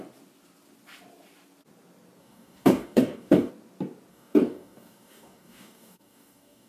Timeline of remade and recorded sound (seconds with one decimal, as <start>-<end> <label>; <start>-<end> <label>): 0.0-2.2 recorded; 2.2-3.5 remade; 3.5-4.1 recorded; 4.1-6.7 remade